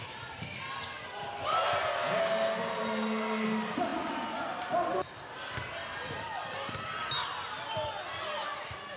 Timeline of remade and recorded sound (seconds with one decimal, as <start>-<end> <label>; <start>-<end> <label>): 0.0-9.0 recorded